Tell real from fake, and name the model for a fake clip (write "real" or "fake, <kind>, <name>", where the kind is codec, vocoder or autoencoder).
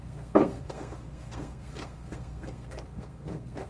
fake, codec, SNAC